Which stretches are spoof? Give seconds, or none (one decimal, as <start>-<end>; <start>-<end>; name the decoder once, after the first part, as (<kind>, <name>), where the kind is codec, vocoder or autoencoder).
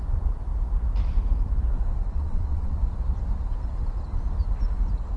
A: 2.0-2.8 (vocoder, WaveNeXt)